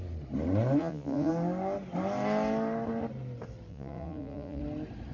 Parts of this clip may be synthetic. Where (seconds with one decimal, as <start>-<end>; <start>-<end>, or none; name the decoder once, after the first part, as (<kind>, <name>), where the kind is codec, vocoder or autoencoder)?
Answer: 0.8-1.3 (vocoder, Vocos); 3.7-4.6